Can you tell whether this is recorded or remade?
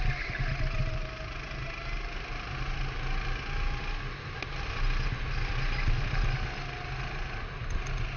recorded